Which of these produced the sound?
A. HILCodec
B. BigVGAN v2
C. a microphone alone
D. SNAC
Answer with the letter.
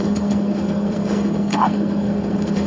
D